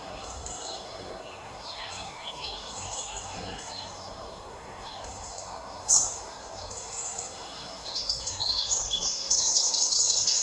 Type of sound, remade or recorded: remade